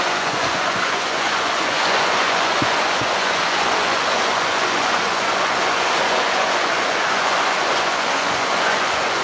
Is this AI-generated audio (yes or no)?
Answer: yes